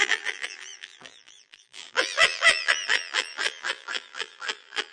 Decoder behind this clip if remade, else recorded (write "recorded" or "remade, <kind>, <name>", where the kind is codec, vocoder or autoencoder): remade, vocoder, BigVGAN v2